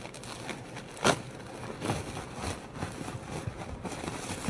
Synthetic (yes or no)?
no